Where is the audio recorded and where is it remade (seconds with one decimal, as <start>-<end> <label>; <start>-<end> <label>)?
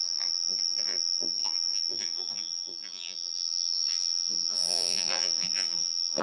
0.0-6.2 remade